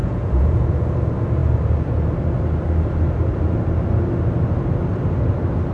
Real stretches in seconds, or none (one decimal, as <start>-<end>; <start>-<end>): 0.6-5.7

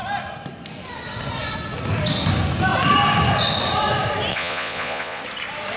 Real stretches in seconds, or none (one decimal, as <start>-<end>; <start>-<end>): 0.0-4.3; 5.2-5.8